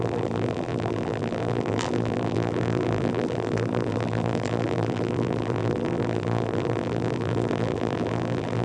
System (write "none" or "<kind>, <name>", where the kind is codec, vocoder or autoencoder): vocoder, BigVGAN v2